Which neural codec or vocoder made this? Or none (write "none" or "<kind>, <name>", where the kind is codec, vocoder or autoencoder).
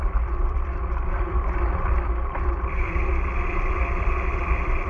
vocoder, BigVGAN v2